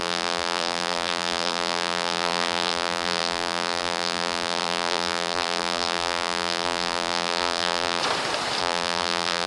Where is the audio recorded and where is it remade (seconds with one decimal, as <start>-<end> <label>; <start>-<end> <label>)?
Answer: 0.0-8.0 remade; 8.0-8.6 recorded; 8.6-9.5 remade